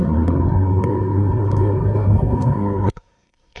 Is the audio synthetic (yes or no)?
yes